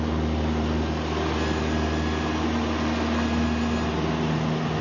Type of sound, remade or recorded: recorded